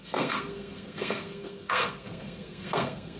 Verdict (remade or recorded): remade